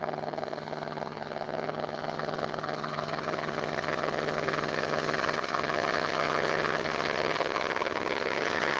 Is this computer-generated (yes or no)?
yes